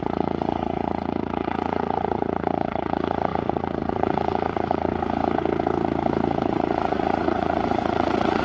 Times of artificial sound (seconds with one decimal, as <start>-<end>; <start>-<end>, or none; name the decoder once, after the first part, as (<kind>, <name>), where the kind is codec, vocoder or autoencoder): 0.0-4.9 (vocoder, Vocos); 6.4-8.4